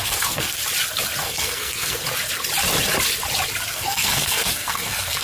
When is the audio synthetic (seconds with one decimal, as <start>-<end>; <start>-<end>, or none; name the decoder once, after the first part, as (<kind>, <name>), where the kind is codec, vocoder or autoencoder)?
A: 0.0-0.6 (codec, SNAC); 1.2-2.0; 3.7-5.2